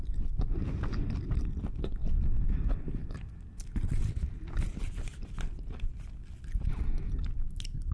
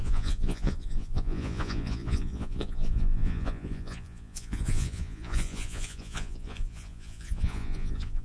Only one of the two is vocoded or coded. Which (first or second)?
second